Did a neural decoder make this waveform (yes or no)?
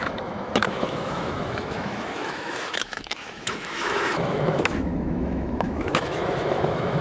yes